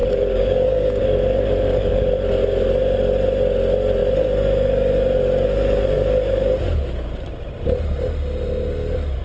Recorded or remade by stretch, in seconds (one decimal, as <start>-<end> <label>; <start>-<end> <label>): 0.0-1.0 remade; 1.0-9.2 recorded